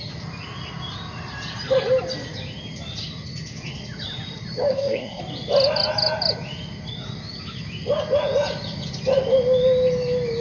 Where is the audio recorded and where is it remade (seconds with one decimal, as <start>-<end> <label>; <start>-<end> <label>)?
0.0-4.7 recorded; 4.7-5.2 remade; 5.2-10.4 recorded

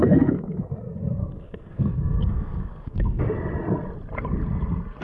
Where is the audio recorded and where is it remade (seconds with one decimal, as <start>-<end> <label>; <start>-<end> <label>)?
0.0-0.7 remade; 0.7-1.2 recorded; 1.2-3.2 remade; 3.2-5.0 recorded

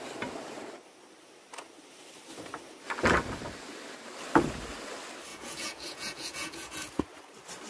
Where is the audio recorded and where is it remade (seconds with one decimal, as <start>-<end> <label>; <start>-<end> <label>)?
0.0-5.3 recorded; 5.3-7.0 remade; 7.0-7.7 recorded

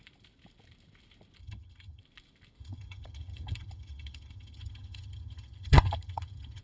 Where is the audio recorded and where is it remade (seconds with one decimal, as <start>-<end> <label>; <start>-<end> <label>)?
0.0-1.4 recorded; 1.4-2.0 remade; 2.0-2.6 recorded; 2.6-6.6 remade

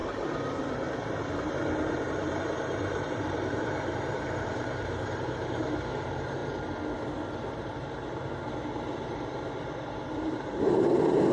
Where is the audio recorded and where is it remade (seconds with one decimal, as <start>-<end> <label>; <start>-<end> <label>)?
0.0-6.4 remade; 6.4-7.5 recorded; 7.5-11.3 remade

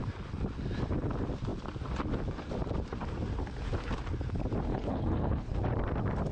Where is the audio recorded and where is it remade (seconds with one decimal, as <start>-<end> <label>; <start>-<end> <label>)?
0.0-4.7 recorded; 4.7-5.6 remade; 5.6-6.3 recorded

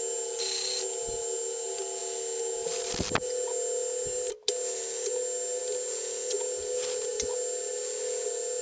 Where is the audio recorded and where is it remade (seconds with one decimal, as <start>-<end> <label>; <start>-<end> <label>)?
0.0-8.6 recorded

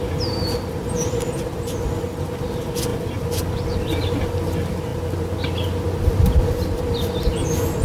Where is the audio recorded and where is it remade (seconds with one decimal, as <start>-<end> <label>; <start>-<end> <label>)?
0.0-4.9 recorded; 4.9-6.8 remade; 6.8-7.8 recorded